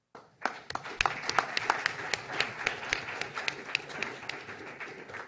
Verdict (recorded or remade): recorded